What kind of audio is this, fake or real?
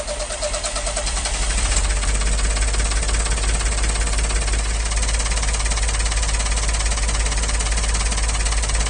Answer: real